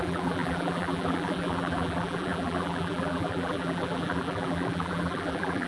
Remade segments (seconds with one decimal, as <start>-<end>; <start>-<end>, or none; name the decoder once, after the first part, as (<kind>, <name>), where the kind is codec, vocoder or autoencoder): 0.0-5.7 (vocoder, BigVGAN v2)